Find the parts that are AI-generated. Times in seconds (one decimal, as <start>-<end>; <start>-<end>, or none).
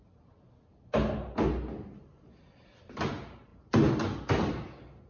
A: none